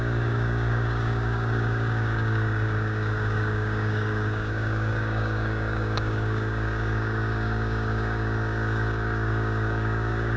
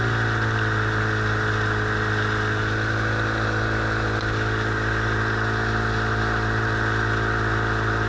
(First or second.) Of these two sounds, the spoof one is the first